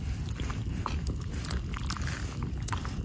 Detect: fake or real real